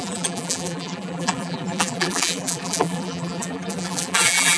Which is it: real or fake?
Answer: fake